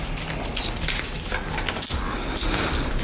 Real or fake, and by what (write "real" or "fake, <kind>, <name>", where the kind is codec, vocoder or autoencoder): real